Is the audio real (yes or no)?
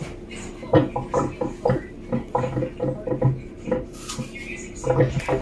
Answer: yes